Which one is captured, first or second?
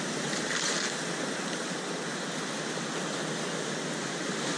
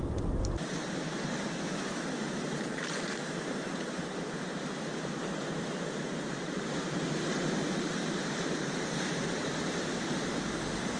first